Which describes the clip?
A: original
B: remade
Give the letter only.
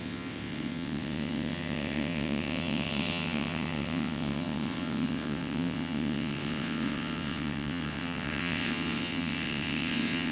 B